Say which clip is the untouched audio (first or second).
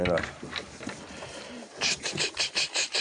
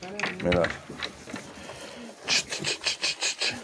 second